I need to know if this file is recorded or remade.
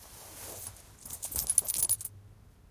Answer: recorded